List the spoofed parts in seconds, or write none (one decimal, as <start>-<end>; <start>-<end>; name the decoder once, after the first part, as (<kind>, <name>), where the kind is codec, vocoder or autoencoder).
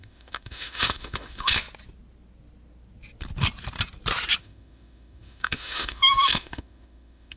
0.0-1.6 (autoencoder, DAC-VAE); 4.4-7.4